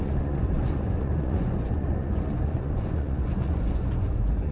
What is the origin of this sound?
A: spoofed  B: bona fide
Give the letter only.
A